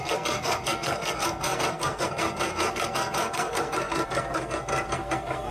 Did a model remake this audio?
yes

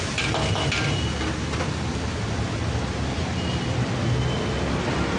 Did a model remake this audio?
no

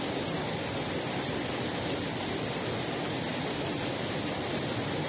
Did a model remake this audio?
no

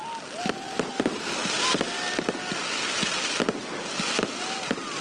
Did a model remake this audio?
no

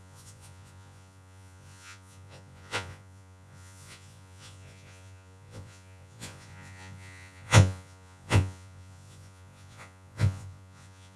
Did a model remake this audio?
yes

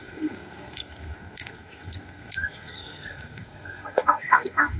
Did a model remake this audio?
yes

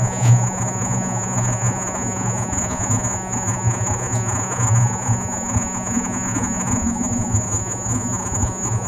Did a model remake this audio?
yes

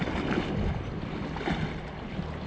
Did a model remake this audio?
no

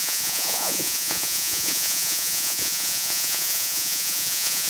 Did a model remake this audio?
yes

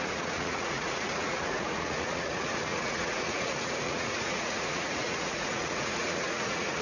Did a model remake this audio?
yes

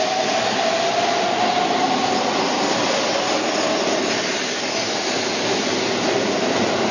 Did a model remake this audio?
no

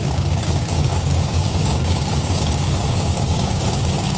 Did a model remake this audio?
yes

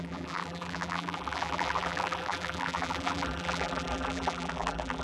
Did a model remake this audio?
yes